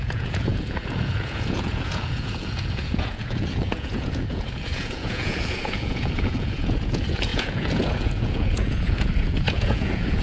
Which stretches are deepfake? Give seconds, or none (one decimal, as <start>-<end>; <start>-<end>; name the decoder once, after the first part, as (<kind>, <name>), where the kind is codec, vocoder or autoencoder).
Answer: 0.0-10.2 (vocoder, Vocos)

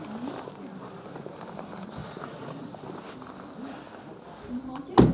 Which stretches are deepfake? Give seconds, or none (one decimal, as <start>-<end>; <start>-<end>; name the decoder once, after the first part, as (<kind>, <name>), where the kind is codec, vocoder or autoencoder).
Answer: 2.0-2.8 (vocoder, Vocos)